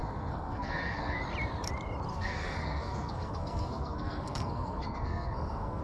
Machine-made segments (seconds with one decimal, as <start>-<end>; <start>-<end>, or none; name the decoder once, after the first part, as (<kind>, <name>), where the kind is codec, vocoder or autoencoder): 0.0-1.2 (codec, SNAC); 2.1-5.8